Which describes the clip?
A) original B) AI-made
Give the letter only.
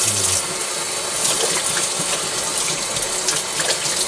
A